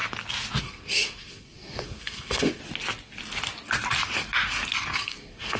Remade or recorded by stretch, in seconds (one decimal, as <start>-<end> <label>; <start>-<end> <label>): 0.0-0.6 recorded; 0.6-2.6 remade; 2.6-5.0 recorded; 5.0-5.6 remade